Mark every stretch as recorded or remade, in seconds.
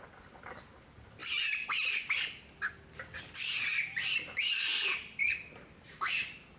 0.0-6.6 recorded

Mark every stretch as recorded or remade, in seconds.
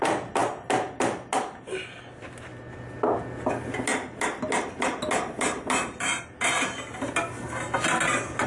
0.0-8.5 recorded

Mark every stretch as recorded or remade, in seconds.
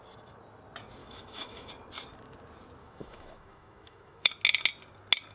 0.0-1.0 recorded; 1.0-1.7 remade; 1.7-2.8 recorded; 2.8-4.3 remade; 4.3-5.3 recorded